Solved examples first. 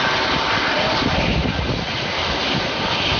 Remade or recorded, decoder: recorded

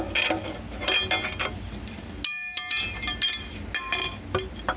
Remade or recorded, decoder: recorded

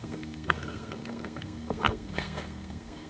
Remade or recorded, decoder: remade, codec, SNAC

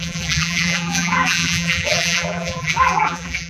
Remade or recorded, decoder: remade, vocoder, BigVGAN v2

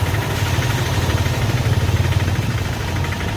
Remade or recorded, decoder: recorded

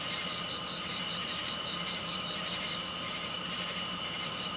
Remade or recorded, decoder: remade, vocoder, BigVGAN v2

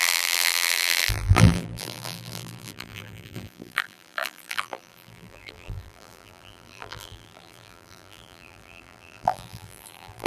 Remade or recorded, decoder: remade, vocoder, BigVGAN v2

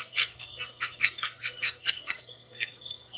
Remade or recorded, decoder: remade, codec, SNAC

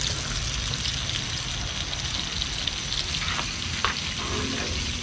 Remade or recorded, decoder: recorded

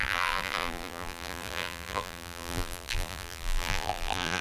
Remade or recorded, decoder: remade, vocoder, BigVGAN v2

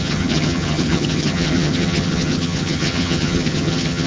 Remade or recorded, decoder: remade, vocoder, HiFi-GAN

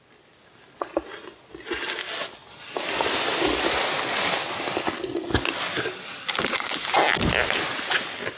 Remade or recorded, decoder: recorded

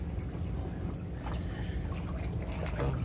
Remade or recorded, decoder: recorded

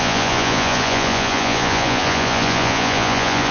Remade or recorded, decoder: remade, vocoder, Vocos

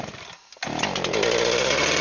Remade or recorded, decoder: recorded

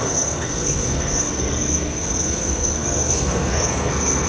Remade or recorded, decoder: remade, codec, SNAC